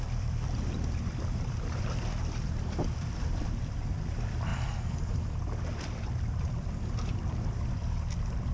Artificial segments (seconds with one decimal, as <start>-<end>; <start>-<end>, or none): 0.0-8.5

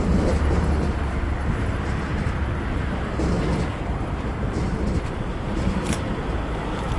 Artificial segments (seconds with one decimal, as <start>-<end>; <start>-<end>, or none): 0.0-1.2; 3.7-7.0

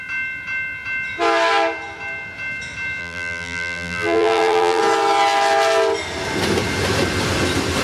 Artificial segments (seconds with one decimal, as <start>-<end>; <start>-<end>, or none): 3.0-4.8

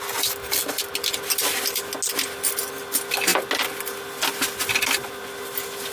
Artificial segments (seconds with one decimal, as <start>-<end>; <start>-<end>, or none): none

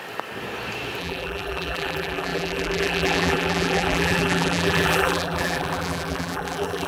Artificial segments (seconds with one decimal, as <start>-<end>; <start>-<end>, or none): 1.0-6.9